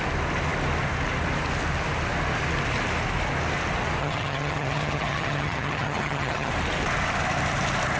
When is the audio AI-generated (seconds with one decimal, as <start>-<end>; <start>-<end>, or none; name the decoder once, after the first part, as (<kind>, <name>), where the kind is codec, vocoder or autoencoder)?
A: 4.0-6.5 (vocoder, HiFi-GAN)